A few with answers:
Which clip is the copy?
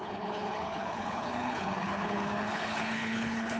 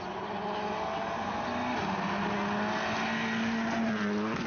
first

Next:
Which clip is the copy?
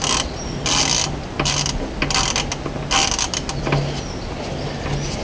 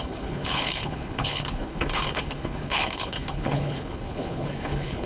second